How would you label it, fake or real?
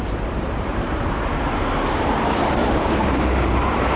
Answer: fake